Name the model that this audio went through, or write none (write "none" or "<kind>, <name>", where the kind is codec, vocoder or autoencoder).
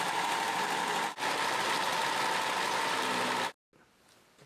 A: none